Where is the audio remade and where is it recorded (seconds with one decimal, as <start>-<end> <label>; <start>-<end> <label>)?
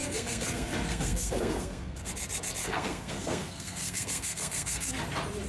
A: 0.0-2.1 remade; 2.1-2.6 recorded; 2.6-4.9 remade; 4.9-5.5 recorded